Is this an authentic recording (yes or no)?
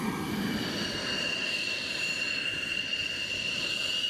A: yes